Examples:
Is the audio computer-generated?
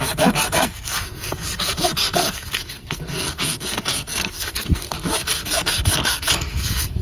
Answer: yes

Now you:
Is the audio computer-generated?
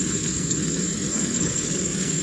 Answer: yes